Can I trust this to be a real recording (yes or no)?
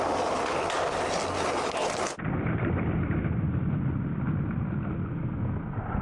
yes